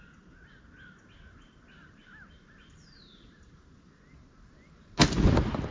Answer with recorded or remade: recorded